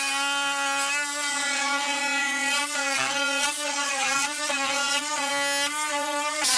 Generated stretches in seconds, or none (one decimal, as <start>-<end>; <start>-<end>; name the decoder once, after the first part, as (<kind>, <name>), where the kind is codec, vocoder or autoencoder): 1.3-5.3 (vocoder, Vocos); 5.9-6.6

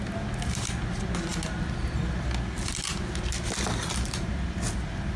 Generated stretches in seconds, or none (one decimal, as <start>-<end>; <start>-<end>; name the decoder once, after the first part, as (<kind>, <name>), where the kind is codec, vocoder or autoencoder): none

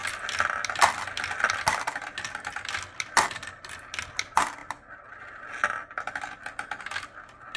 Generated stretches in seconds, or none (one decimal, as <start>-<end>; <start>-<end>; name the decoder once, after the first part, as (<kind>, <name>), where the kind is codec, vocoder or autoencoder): none